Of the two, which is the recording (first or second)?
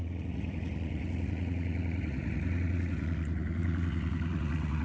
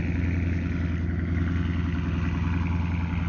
second